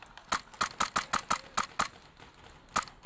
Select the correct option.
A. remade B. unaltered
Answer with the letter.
B